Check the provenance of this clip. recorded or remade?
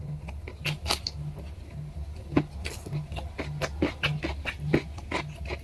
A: recorded